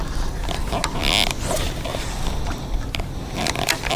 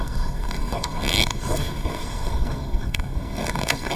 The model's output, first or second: second